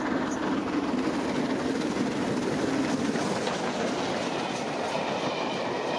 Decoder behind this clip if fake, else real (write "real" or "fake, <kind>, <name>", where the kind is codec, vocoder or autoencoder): real